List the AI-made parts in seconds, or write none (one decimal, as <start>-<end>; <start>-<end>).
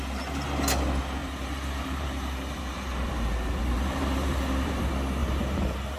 1.2-4.8; 5.2-6.0